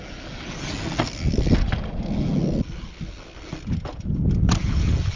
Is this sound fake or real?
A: real